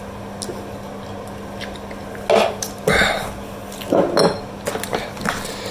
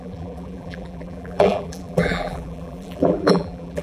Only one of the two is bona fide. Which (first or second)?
first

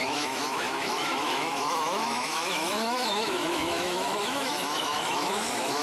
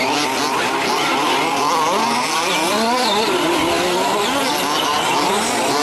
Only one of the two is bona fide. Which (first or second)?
second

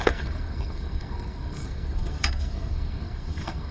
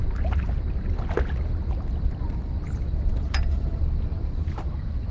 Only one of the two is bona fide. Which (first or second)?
second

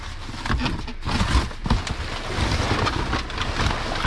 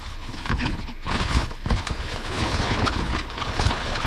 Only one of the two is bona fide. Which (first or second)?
first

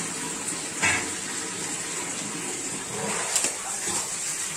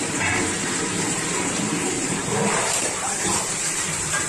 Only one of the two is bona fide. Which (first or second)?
first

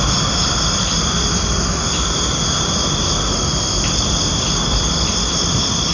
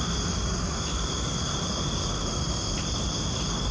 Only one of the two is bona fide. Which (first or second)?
first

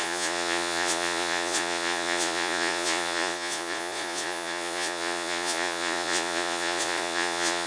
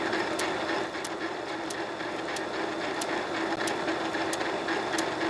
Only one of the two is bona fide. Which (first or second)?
second